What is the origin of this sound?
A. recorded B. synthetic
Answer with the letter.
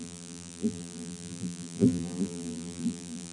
B